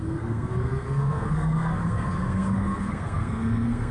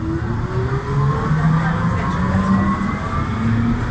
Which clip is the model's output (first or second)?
first